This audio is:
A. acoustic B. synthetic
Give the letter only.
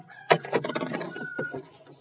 B